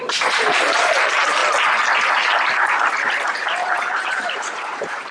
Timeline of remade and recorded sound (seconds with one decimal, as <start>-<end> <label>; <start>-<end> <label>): 0.0-1.4 remade; 1.4-2.1 recorded; 2.1-5.1 remade